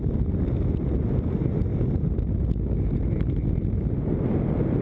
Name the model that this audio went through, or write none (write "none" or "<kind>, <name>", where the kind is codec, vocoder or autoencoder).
none